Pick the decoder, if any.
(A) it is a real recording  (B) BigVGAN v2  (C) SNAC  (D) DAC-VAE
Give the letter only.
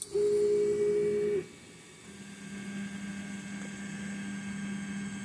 A